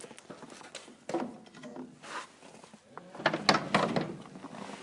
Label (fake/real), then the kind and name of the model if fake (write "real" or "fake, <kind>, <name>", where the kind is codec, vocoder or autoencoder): real